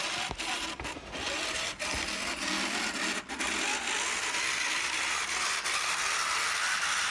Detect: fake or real real